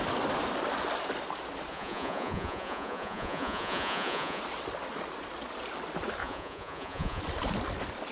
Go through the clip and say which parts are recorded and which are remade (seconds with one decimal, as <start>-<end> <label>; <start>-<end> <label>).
0.0-1.7 recorded; 1.7-4.4 remade; 4.4-6.2 recorded; 6.2-7.2 remade; 7.2-8.1 recorded